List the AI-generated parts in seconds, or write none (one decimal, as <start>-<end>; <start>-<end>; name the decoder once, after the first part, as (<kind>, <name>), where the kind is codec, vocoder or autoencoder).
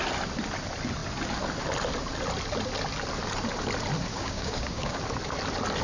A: 4.1-5.0 (codec, DAC)